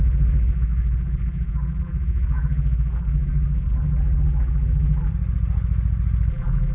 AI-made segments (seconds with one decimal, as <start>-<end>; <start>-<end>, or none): 0.0-5.1; 6.3-6.7